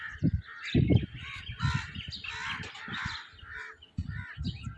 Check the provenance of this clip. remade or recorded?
recorded